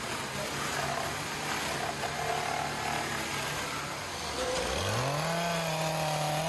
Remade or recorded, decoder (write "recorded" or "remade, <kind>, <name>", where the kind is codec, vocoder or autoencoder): recorded